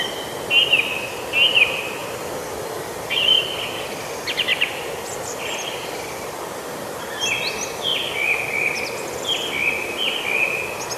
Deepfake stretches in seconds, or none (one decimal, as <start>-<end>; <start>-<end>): 2.0-2.7; 4.5-6.1